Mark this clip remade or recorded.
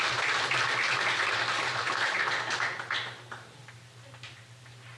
recorded